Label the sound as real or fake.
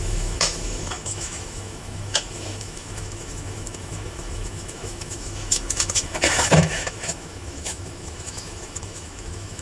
fake